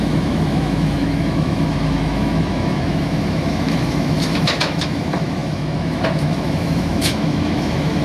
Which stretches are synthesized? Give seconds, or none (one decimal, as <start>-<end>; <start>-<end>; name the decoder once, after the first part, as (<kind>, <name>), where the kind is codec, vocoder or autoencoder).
0.0-8.0 (autoencoder, DAC-VAE)